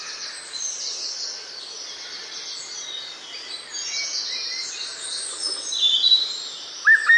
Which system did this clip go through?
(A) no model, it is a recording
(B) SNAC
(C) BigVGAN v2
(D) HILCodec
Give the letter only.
A